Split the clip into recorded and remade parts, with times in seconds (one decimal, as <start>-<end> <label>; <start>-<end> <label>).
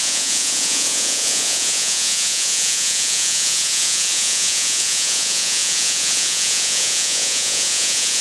0.0-8.2 remade